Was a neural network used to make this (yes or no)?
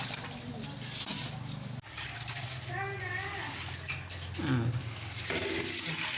no